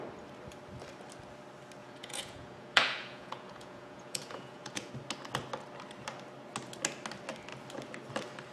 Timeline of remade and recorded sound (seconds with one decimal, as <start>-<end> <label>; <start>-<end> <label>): 0.0-1.8 recorded; 1.8-4.9 remade; 4.9-8.5 recorded